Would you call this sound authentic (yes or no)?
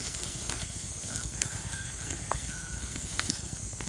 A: no